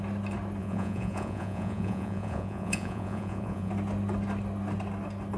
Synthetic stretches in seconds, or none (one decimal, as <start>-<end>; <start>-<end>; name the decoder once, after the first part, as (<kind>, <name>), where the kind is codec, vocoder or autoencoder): 0.6-3.7 (vocoder, Vocos)